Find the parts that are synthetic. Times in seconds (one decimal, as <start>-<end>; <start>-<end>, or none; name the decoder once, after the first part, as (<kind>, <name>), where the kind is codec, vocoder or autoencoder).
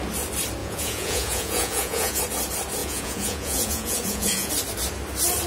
0.6-2.2 (vocoder, Vocos); 2.8-4.5